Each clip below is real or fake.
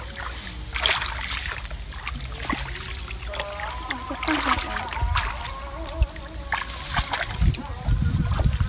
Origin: real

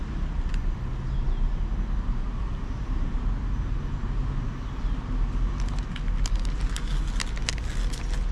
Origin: real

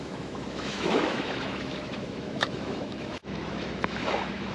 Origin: fake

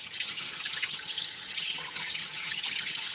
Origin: fake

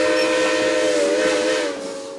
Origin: real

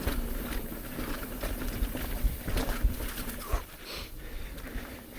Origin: real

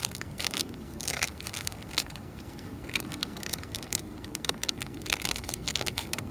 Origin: fake